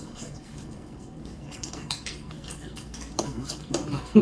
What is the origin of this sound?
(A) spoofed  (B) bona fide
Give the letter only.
A